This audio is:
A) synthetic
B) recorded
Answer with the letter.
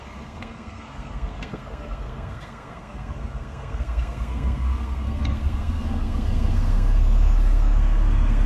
A